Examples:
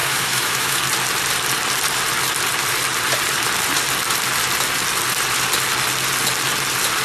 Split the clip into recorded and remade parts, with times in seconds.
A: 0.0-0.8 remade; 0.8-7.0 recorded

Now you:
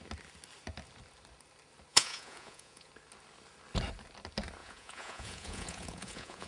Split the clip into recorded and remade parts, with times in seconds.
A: 0.0-1.9 recorded; 1.9-2.9 remade; 2.9-4.6 recorded; 4.6-6.5 remade

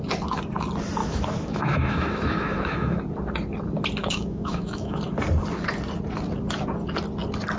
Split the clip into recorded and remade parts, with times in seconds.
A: 0.0-1.0 recorded; 1.0-3.0 remade; 3.0-4.0 recorded; 4.0-5.0 remade; 5.0-7.6 recorded

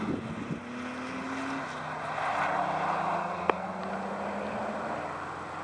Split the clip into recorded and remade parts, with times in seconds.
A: 0.0-3.2 recorded; 3.2-3.8 remade; 3.8-5.6 recorded